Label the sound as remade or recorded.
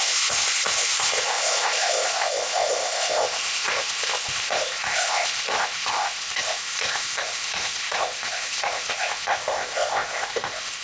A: remade